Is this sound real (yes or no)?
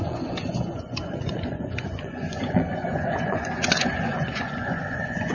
no